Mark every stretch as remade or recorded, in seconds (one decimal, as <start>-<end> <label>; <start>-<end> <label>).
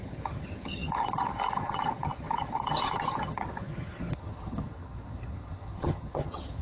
0.0-6.6 remade